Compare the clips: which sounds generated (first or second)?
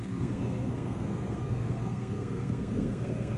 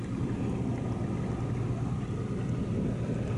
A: first